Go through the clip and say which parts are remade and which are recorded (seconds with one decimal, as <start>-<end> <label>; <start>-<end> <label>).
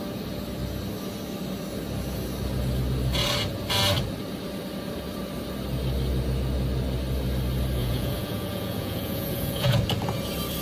0.0-7.8 recorded; 7.8-9.8 remade; 9.8-10.6 recorded